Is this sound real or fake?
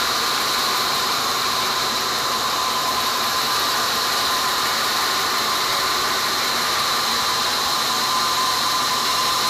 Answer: fake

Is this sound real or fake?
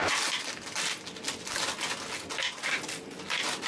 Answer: real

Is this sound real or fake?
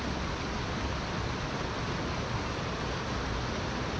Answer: real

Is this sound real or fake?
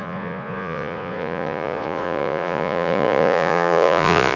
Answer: fake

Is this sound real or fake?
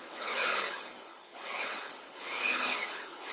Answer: fake